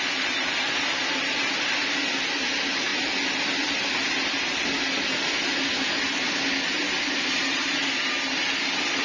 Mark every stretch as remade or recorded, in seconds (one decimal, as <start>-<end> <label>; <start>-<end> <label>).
0.0-9.0 recorded